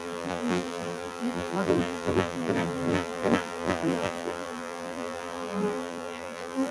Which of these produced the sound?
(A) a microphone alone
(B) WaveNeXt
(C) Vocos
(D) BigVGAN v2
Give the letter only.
D